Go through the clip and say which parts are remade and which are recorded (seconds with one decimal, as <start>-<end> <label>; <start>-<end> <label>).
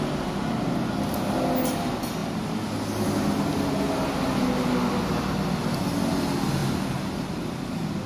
0.0-8.1 recorded